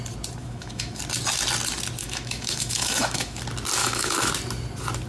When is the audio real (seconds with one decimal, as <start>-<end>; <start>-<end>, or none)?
0.0-0.4; 1.0-2.0; 3.4-3.8; 4.3-5.1